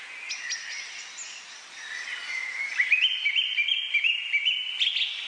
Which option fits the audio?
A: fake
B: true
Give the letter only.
B